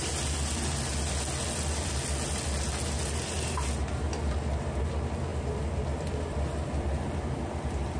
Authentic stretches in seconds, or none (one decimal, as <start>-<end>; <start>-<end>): 0.0-5.3